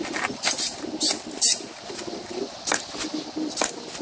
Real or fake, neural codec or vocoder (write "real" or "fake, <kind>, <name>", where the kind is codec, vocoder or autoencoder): real